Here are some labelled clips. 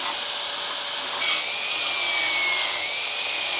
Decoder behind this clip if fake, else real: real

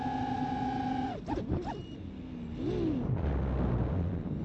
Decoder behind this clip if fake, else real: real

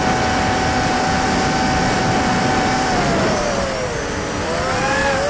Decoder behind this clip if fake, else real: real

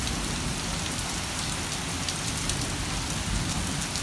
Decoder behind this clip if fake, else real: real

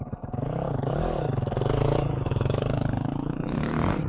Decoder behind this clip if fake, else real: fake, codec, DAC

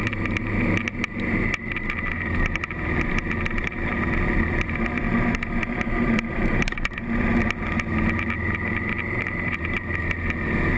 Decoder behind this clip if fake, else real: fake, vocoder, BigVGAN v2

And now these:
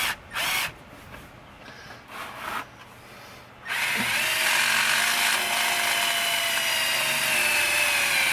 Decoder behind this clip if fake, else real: real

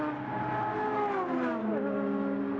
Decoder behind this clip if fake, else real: real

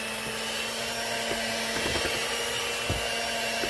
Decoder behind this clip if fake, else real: real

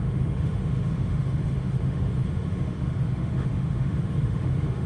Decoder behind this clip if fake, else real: fake, autoencoder, DAC-VAE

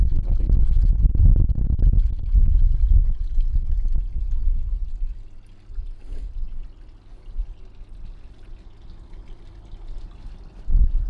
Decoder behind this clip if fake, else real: real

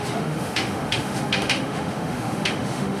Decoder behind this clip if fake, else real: fake, autoencoder, DAC-VAE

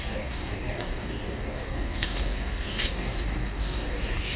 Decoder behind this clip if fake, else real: fake, codec, DAC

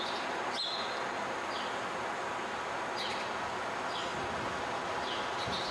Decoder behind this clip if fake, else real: real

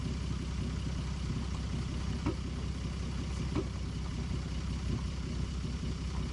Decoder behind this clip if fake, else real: real